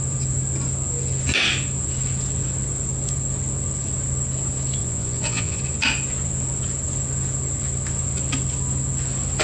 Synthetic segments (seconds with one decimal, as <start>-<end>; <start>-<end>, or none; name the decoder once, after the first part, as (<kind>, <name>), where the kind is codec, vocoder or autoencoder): 4.8-5.6 (vocoder, Vocos)